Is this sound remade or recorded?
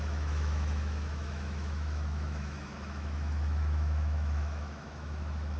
remade